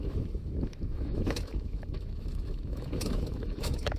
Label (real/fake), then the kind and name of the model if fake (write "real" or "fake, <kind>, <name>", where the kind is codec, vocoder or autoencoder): fake, autoencoder, DAC-VAE